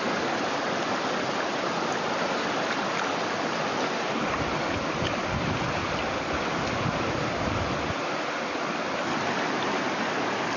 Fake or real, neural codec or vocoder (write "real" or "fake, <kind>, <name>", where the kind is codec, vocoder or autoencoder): real